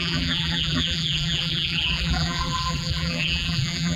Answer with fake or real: fake